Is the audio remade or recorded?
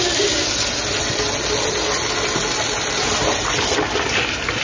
recorded